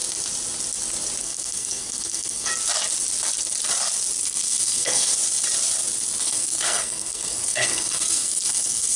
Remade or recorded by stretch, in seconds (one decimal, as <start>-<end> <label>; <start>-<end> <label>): 0.0-1.2 recorded; 1.2-2.5 remade; 2.5-4.2 recorded; 4.2-5.1 remade; 5.1-6.2 recorded; 6.2-9.0 remade